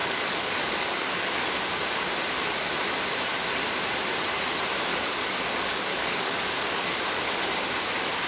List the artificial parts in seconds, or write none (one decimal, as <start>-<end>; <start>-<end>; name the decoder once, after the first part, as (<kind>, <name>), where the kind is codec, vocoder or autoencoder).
0.0-1.5 (codec, DAC); 4.9-7.3